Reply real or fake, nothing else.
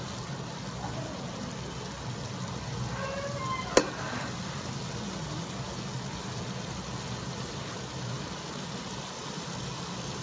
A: real